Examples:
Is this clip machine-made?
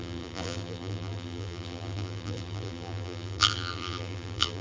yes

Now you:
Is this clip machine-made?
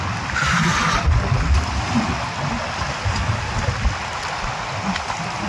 no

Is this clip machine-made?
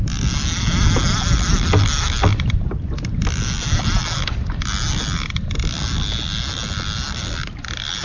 no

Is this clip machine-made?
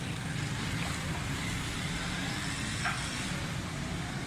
no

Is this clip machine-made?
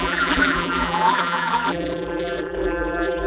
yes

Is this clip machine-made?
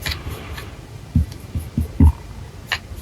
no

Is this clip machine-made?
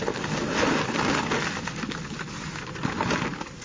no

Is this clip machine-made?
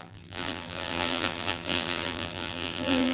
yes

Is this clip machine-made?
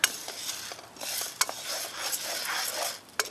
no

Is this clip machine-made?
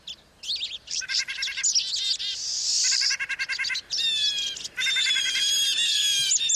no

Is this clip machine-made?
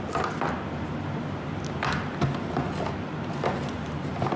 no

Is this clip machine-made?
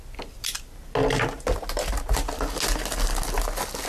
no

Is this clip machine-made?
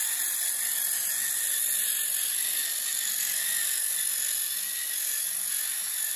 no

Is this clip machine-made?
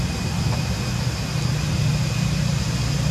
no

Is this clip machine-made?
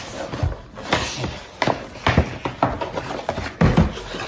no